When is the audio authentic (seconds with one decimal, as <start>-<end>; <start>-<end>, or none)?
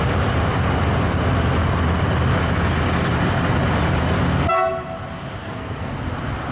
0.0-5.4; 5.9-6.5